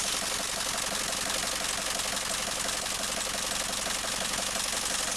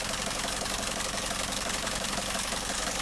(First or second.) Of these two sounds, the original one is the first